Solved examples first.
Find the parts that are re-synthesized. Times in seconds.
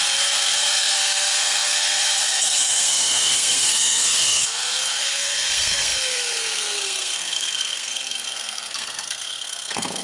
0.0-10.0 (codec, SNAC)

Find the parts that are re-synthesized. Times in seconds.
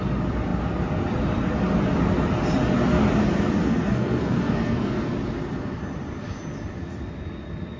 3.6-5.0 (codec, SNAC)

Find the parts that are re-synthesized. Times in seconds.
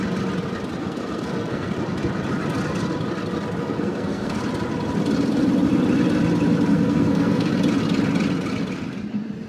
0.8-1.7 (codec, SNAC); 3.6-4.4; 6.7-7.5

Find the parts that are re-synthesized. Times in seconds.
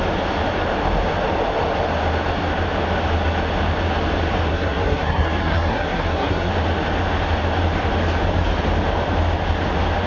4.5-6.5 (codec, SNAC)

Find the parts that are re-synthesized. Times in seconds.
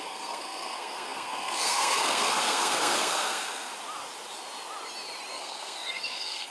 0.0-3.7 (codec, SNAC); 5.3-6.5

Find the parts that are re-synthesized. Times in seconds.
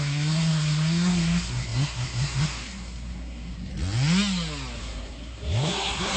0.0-3.7 (codec, SNAC); 4.8-6.2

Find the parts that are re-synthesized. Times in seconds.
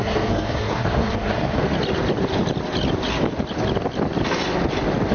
0.0-1.6 (codec, SNAC)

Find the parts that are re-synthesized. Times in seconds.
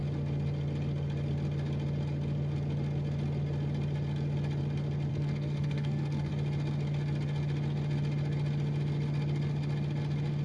5.1-6.3 (codec, SNAC)